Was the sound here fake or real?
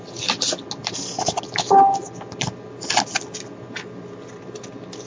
real